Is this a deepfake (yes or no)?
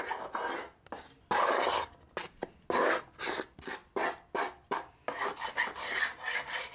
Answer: no